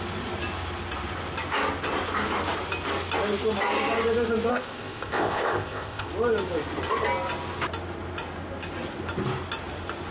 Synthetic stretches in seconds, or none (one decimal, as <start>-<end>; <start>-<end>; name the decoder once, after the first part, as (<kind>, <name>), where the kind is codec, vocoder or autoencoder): 4.5-6.1 (codec, ZipCodec)